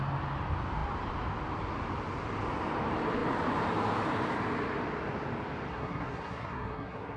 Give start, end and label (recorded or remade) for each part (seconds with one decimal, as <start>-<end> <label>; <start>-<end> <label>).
0.0-5.7 recorded; 5.7-7.2 remade

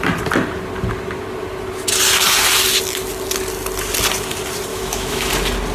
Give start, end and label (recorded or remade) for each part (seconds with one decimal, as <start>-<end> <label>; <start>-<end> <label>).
0.0-4.7 recorded; 4.7-5.3 remade; 5.3-5.7 recorded